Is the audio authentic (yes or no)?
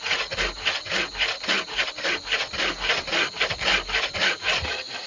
yes